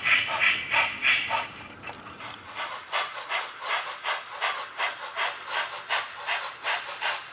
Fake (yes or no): no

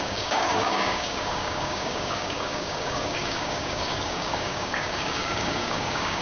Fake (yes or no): yes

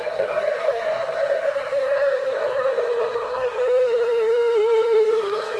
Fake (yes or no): yes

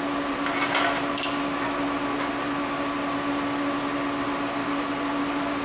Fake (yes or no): no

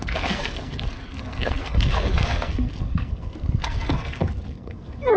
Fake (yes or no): yes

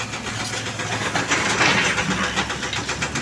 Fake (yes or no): no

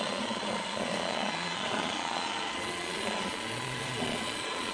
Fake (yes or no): yes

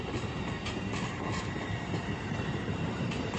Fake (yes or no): yes